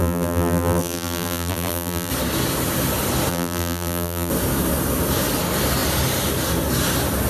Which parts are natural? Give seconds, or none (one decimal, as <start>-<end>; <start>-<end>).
2.1-3.3; 4.3-7.3